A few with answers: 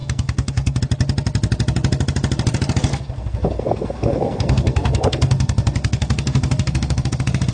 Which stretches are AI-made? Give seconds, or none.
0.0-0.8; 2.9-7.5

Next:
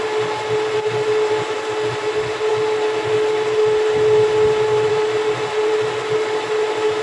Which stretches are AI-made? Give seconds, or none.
none

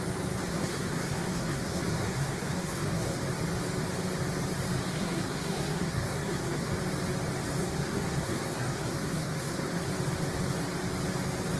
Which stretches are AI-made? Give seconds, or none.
0.5-3.2; 4.9-6.7; 7.6-9.9

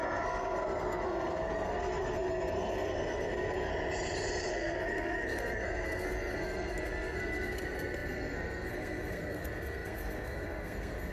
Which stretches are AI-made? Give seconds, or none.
0.0-3.7; 4.5-11.1

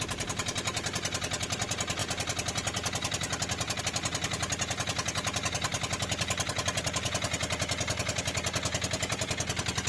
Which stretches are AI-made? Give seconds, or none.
none

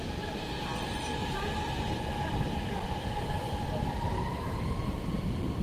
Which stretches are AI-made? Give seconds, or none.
none